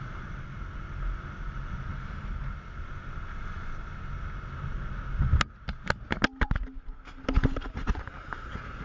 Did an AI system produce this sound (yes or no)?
no